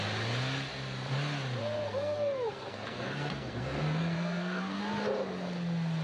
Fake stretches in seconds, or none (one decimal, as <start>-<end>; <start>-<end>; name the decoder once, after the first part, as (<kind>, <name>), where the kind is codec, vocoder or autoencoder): 1.6-4.8 (codec, SNAC)